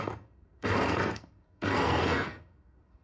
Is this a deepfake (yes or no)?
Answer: yes